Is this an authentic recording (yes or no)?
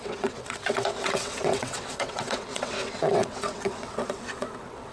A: no